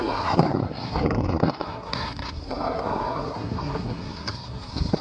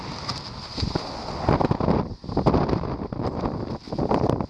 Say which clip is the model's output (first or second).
first